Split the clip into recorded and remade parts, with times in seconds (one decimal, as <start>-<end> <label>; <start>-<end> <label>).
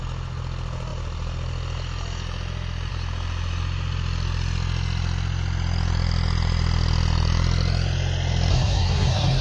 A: 0.0-8.5 recorded; 8.5-9.4 remade